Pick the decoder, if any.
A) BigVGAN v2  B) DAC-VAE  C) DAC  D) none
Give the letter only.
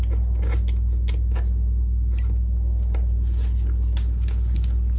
D